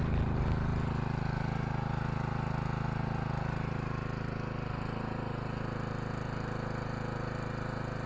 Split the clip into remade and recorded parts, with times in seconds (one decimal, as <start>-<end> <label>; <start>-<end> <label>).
0.0-8.1 recorded